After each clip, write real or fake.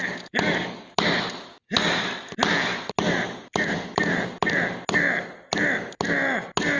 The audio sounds real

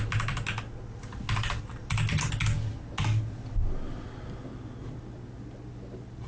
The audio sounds real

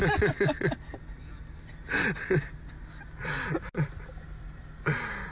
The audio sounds real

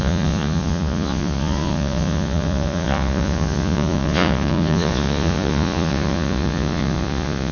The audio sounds fake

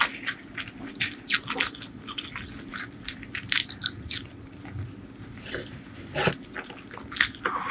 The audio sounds real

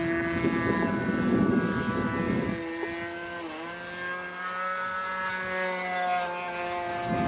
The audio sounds real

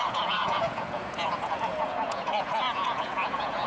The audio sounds fake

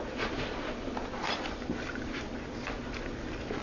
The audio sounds real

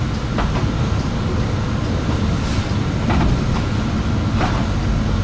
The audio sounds real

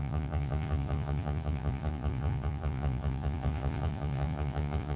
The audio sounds fake